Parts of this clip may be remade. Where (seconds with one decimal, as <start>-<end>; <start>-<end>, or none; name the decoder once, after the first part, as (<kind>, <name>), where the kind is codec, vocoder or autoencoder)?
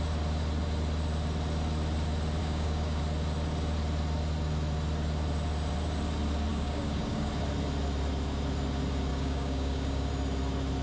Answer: 2.4-3.0 (codec, DAC); 6.5-7.3; 9.1-10.1